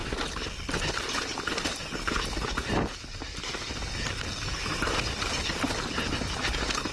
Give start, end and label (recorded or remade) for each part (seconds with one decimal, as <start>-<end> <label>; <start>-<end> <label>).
0.0-4.7 recorded; 4.7-5.5 remade; 5.5-6.9 recorded